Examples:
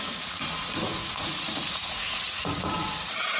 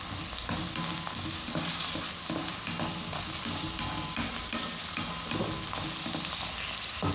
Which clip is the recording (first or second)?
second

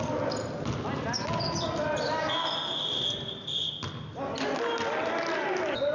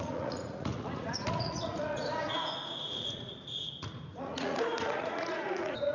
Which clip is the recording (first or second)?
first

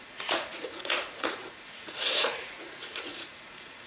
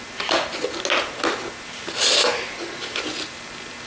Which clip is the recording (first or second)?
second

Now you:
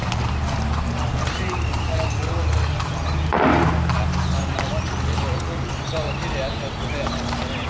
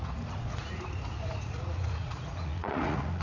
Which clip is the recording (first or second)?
first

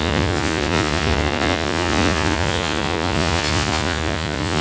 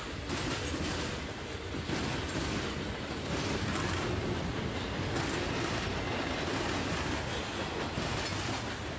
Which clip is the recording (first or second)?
second